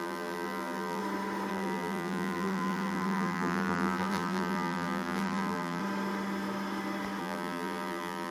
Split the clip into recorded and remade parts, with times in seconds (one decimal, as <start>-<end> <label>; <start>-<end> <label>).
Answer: 0.0-1.0 remade; 1.0-1.5 recorded; 1.5-5.8 remade; 5.8-7.2 recorded; 7.2-8.3 remade